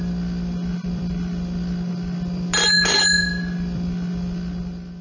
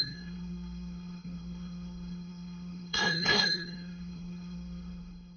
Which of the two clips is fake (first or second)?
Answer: second